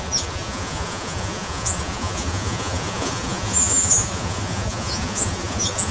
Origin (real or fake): fake